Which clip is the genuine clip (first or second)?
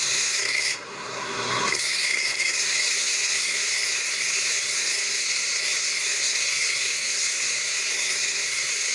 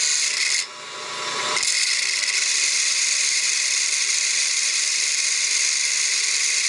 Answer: second